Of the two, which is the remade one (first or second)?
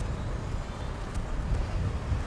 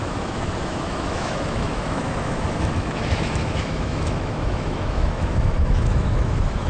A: second